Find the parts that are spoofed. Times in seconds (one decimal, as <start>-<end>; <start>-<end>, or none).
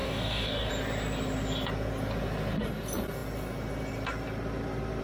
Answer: 0.0-0.7